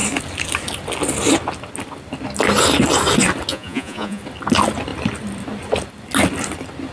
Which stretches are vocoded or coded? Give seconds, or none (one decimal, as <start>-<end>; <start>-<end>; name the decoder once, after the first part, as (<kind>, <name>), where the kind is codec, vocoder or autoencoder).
3.5-4.2 (vocoder, Vocos)